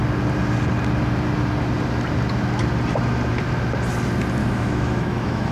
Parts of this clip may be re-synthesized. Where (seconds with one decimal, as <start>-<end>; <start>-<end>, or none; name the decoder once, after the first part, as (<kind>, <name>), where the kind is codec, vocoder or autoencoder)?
4.4-5.5 (autoencoder, DAC-VAE)